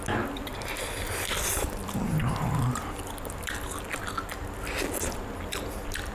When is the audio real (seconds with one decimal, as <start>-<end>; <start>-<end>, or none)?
0.0-0.5; 4.1-6.1